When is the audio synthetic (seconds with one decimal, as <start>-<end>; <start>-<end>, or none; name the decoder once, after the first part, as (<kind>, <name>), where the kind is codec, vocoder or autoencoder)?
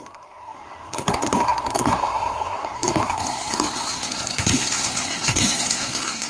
0.0-6.3 (codec, SNAC)